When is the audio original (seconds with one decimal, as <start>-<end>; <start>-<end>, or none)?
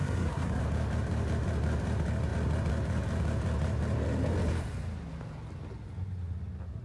0.6-6.8